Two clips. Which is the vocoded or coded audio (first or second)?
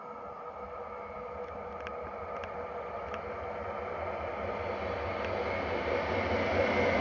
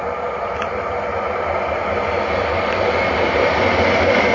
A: second